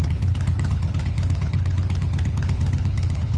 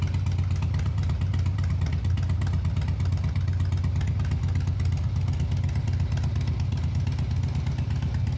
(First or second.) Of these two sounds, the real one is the second